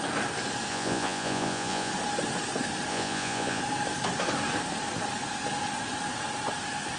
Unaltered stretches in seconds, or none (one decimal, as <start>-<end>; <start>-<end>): 0.0-0.7; 1.9-2.9; 3.6-7.0